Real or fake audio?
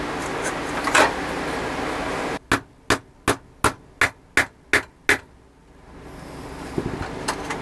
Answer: real